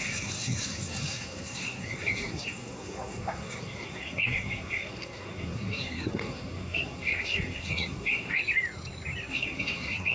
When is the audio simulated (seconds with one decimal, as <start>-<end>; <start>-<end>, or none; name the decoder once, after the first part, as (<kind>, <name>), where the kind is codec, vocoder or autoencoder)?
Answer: 0.0-8.4 (codec, SNAC); 9.3-10.1